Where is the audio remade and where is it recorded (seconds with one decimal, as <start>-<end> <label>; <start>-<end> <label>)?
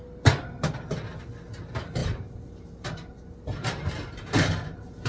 0.0-2.0 recorded; 2.0-5.1 remade